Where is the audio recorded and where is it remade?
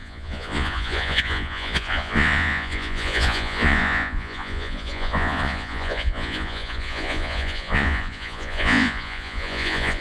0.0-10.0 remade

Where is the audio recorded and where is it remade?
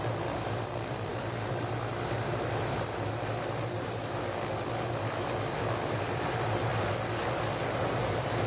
0.0-8.5 recorded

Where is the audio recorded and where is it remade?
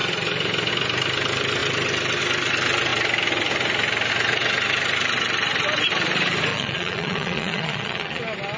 0.0-6.5 recorded; 6.5-8.2 remade; 8.2-8.6 recorded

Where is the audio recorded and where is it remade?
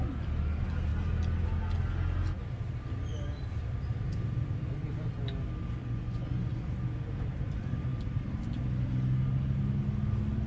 0.0-5.8 recorded; 5.8-6.8 remade; 6.8-10.5 recorded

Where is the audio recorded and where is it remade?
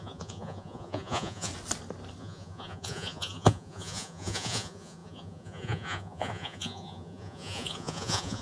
0.0-1.5 remade; 1.5-2.2 recorded; 2.2-8.4 remade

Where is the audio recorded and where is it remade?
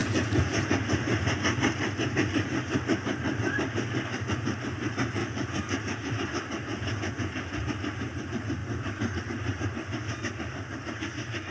0.0-0.7 remade; 0.7-5.2 recorded; 5.2-6.1 remade; 6.1-6.7 recorded; 6.7-7.7 remade; 7.7-11.5 recorded